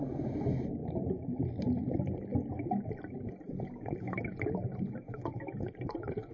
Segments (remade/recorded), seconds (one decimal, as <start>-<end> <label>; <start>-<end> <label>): 0.0-6.3 recorded